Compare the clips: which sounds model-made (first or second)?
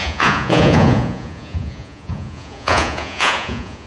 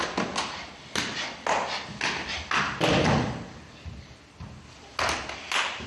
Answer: first